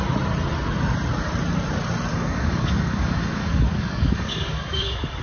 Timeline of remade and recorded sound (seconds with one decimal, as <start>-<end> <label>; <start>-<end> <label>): 0.0-2.1 recorded; 2.1-5.2 remade